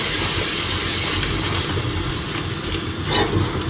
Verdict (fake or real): real